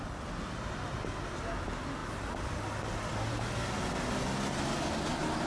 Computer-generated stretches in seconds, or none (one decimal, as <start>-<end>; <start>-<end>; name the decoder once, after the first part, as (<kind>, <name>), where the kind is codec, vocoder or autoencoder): none

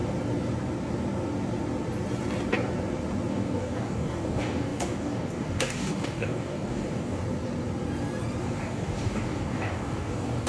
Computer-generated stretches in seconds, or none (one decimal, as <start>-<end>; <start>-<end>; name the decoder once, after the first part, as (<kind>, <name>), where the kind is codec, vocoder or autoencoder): 3.3-7.2 (codec, DAC); 8.4-10.5